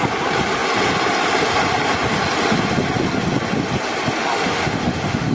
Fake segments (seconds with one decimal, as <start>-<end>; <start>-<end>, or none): 4.2-5.3